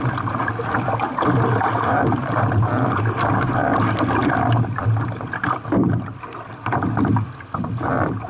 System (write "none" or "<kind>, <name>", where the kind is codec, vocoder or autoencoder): none